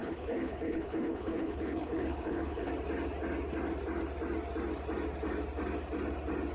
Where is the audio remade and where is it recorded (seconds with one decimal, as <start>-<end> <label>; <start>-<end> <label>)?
0.0-2.7 remade; 2.7-6.5 recorded